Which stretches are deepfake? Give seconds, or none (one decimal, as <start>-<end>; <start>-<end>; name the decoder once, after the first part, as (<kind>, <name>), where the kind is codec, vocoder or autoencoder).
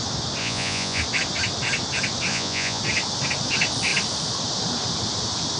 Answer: 0.4-1.0 (vocoder, Vocos); 2.3-2.8